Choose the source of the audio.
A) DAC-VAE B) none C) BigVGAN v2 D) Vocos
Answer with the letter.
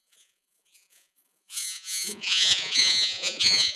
D